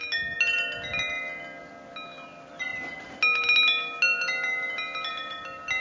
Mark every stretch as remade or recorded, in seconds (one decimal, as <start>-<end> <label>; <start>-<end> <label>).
0.0-5.8 recorded